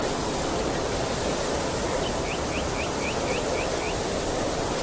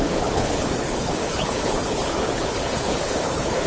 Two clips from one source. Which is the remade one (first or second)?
second